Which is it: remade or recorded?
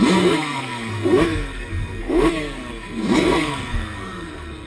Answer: remade